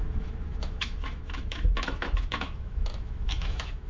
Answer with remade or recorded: remade